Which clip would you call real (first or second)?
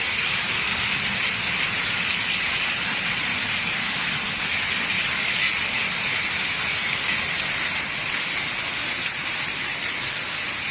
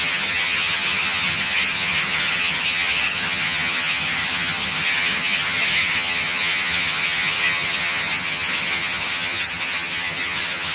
first